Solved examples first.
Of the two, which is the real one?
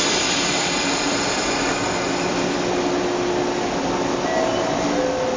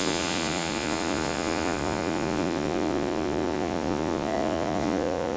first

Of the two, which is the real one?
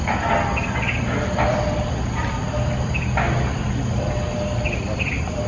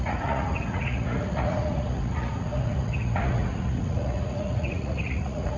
first